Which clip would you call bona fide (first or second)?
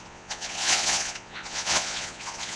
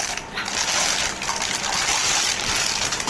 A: second